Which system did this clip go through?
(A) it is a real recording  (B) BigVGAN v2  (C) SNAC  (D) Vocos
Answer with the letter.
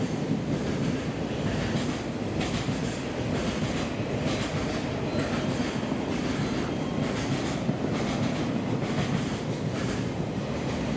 A